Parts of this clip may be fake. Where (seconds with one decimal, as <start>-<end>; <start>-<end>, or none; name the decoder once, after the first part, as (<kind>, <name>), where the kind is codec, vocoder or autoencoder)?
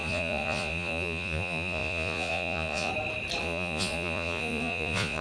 0.0-2.9 (vocoder, Vocos); 3.4-5.2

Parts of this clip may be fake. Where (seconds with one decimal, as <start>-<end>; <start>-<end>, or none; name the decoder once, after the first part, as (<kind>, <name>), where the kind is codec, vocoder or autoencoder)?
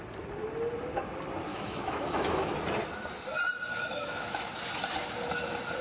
1.5-2.5 (autoencoder, DAC-VAE); 3.7-4.5